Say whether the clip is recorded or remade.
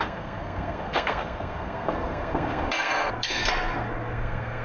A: remade